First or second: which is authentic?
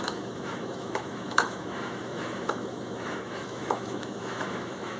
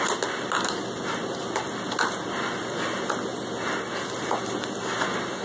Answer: second